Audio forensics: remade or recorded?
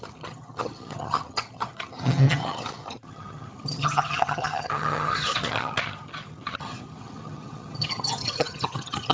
remade